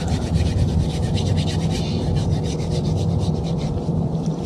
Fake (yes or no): yes